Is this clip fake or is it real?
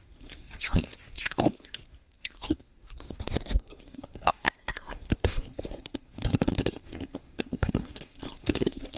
fake